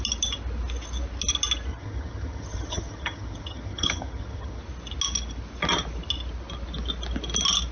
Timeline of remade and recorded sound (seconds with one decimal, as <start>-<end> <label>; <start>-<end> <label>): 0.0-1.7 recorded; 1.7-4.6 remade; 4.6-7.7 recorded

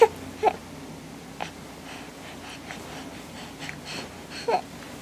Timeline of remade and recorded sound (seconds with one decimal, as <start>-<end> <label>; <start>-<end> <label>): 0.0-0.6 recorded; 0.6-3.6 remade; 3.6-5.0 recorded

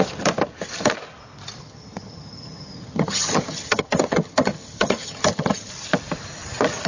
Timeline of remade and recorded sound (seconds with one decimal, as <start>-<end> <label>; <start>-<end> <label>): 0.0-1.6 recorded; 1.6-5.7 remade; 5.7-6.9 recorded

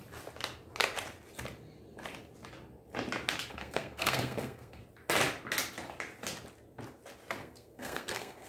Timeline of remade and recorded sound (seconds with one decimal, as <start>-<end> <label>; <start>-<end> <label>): 0.0-3.5 recorded; 3.5-4.8 remade; 4.8-7.4 recorded; 7.4-8.5 remade